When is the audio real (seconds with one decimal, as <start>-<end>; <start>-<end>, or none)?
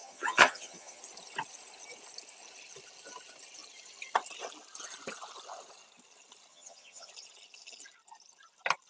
1.0-6.5; 7.1-8.9